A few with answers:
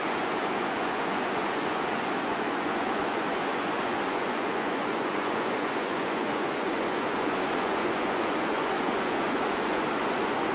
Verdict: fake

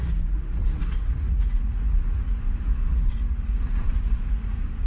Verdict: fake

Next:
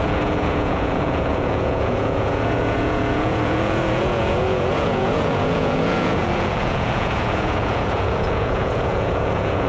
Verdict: fake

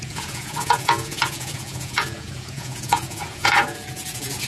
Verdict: fake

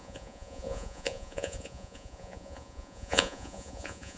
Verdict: fake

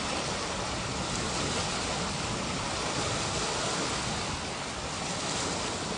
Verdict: real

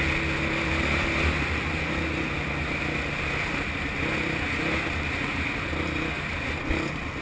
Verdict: real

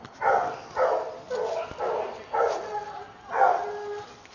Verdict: real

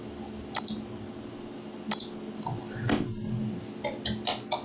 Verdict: real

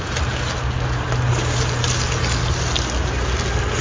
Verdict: real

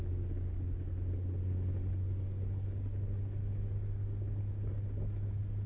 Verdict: real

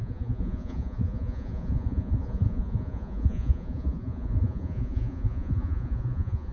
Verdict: fake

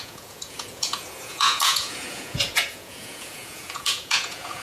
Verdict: fake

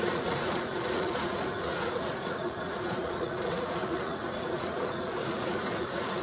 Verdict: fake